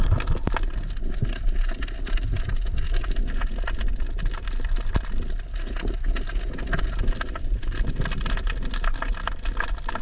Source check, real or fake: real